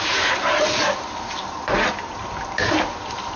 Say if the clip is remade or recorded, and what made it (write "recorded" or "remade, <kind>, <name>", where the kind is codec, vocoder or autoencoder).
remade, vocoder, BigVGAN v2